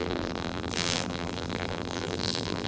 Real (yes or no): no